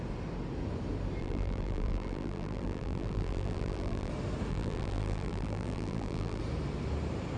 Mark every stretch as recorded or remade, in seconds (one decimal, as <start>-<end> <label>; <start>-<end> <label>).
0.0-1.2 recorded; 1.2-4.1 remade; 4.1-4.5 recorded; 4.5-6.4 remade; 6.4-7.4 recorded